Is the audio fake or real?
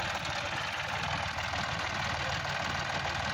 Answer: real